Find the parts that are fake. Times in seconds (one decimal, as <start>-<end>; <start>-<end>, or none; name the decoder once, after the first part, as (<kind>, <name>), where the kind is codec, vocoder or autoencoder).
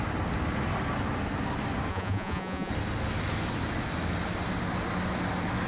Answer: 1.9-2.7 (vocoder, Vocos)